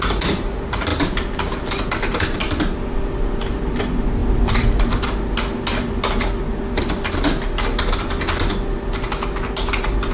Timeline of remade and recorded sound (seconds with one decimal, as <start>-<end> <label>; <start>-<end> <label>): 0.0-0.9 recorded; 0.9-2.6 remade; 2.6-4.2 recorded; 4.2-5.0 remade; 5.0-10.1 recorded